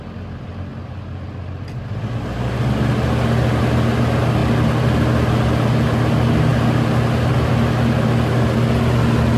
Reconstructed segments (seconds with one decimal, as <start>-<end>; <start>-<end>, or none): none